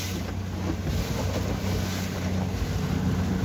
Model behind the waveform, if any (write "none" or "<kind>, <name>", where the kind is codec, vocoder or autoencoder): none